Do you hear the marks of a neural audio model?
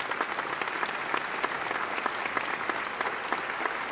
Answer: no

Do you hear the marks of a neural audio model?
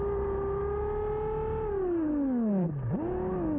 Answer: no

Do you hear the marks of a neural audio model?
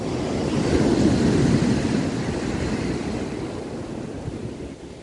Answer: no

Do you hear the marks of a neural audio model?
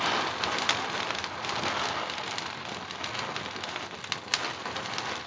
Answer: no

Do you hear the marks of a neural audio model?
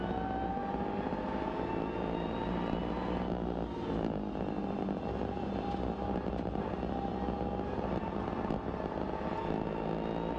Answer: no